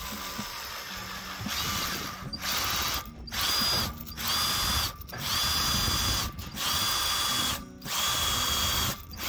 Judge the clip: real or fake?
real